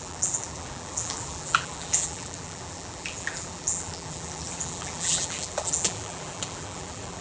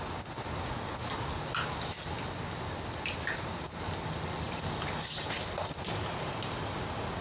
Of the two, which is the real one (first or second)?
second